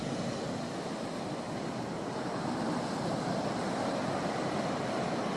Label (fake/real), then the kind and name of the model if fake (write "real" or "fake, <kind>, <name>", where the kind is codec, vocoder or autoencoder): real